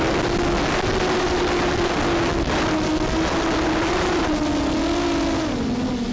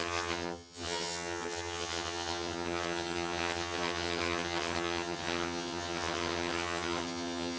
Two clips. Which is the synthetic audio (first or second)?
second